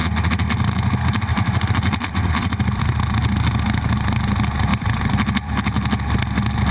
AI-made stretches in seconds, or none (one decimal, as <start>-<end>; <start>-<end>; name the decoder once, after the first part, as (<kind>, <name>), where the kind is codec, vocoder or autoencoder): 1.3-2.8 (vocoder, BigVGAN v2); 4.7-5.6